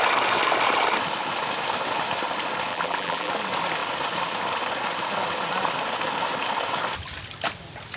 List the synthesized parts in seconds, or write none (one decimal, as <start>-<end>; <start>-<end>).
2.7-3.3